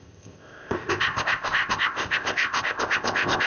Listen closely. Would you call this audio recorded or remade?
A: remade